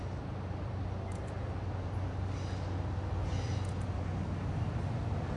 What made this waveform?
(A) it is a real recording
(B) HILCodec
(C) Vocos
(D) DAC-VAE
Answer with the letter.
A